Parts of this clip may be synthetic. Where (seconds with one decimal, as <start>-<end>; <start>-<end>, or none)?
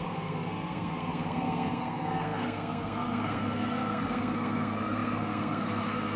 0.0-6.2